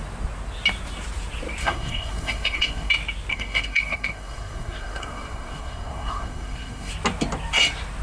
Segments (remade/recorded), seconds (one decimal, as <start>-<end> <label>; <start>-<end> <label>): 0.0-1.6 recorded; 1.6-2.9 remade; 2.9-3.3 recorded; 3.3-6.9 remade; 6.9-8.0 recorded